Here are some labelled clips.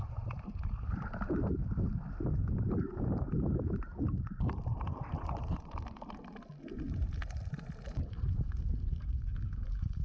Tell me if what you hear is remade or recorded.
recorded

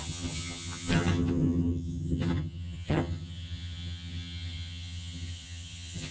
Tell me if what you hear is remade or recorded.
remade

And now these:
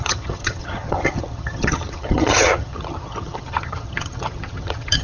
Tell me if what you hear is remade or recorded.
remade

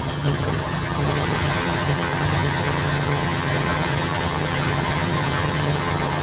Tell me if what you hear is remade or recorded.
remade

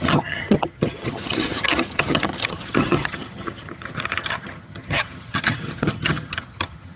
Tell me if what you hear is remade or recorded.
remade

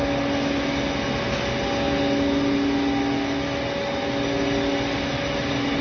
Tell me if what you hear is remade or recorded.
recorded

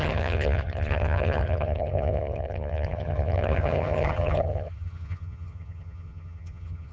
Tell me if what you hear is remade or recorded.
remade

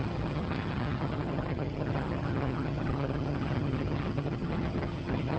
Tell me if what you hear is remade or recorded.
remade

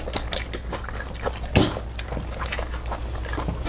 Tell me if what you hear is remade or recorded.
recorded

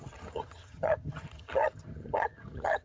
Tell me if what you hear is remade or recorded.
remade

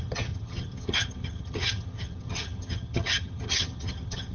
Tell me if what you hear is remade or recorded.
remade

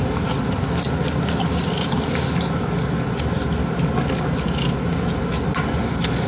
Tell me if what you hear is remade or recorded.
recorded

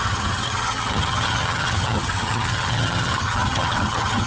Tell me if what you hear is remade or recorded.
remade